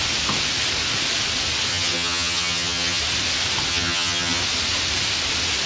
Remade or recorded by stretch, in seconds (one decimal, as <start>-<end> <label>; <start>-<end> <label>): 0.0-1.7 recorded; 1.7-3.0 remade; 3.0-3.7 recorded; 3.7-4.4 remade; 4.4-5.7 recorded